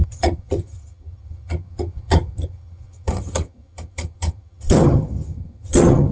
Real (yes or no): no